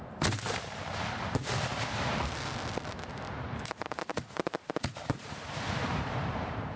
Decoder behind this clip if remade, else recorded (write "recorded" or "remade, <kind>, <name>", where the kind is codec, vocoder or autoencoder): recorded